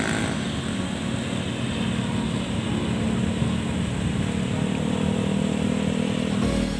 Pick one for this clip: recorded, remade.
recorded